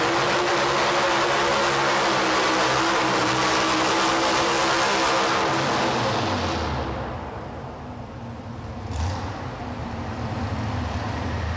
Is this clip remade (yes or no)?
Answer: no